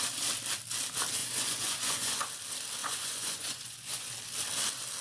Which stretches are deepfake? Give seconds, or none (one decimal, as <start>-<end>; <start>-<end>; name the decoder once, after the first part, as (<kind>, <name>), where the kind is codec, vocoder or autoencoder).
1.2-2.3 (vocoder, Vocos); 2.8-4.1